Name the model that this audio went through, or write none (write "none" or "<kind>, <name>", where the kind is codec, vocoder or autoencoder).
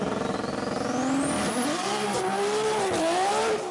none